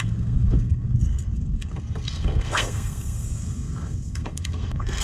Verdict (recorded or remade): remade